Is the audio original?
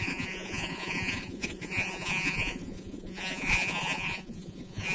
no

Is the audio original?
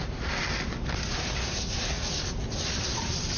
yes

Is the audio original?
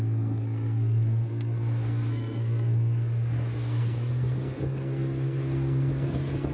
no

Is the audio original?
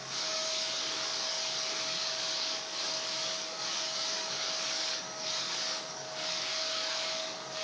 no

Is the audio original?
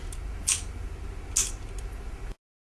yes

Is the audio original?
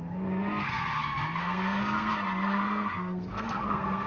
no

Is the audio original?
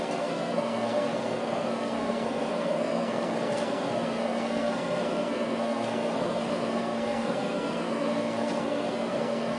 no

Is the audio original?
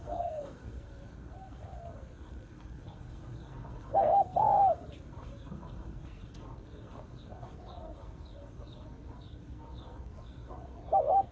no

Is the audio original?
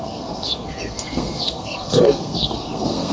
no